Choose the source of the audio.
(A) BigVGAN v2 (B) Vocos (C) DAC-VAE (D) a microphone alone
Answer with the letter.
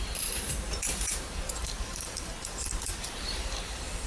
A